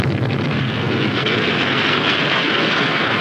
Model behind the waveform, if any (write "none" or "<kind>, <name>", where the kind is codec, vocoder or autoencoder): codec, SNAC